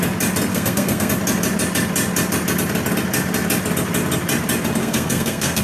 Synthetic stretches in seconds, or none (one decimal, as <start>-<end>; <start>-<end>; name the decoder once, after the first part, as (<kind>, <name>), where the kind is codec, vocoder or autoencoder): 0.5-1.1 (codec, SNAC); 4.8-5.6